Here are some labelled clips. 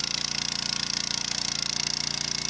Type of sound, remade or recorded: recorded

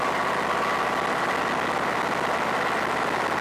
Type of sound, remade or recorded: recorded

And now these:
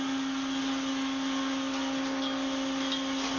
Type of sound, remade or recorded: recorded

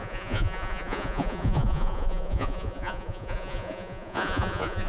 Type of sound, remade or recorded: remade